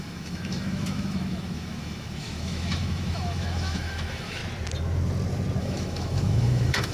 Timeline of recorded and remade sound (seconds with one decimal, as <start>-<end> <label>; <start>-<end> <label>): 0.0-4.4 remade; 4.4-5.6 recorded; 5.6-6.9 remade